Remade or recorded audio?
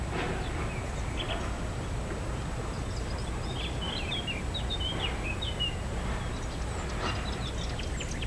recorded